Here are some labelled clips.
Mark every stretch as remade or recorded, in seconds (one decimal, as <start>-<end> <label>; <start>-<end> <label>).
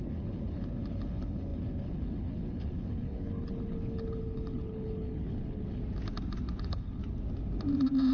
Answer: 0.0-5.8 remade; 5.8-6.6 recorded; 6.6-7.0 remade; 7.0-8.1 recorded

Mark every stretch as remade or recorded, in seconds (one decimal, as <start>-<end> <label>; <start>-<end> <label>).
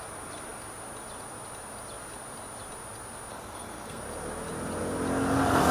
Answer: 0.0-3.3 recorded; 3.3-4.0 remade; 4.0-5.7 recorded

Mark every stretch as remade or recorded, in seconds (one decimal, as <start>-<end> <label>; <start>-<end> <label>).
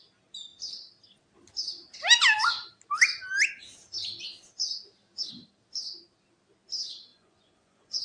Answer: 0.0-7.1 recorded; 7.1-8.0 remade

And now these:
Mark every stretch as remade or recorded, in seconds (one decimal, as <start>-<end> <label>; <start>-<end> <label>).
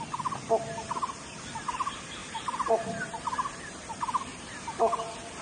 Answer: 0.0-2.2 recorded; 2.2-3.9 remade; 3.9-5.4 recorded